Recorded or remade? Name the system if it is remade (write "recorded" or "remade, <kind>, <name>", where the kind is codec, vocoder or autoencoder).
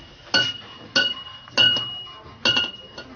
recorded